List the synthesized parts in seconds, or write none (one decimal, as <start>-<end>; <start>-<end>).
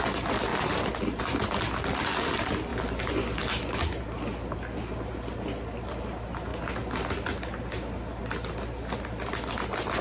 none